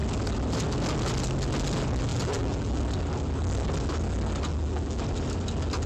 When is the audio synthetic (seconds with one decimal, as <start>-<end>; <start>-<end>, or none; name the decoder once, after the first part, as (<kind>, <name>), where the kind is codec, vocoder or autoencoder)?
2.1-2.8 (vocoder, BigVGAN v2); 4.5-5.0